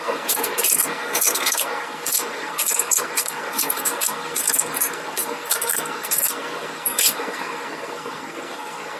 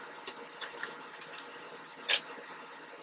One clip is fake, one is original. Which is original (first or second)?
second